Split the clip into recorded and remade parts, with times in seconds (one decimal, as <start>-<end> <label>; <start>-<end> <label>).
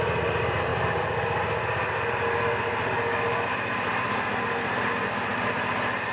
0.0-6.1 recorded